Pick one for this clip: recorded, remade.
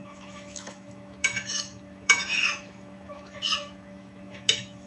remade